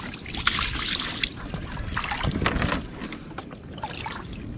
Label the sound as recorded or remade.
recorded